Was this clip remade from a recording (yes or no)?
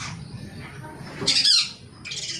no